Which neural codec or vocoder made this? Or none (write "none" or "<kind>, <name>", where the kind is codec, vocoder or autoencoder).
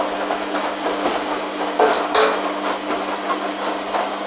none